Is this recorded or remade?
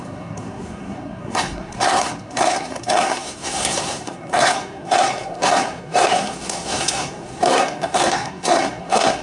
remade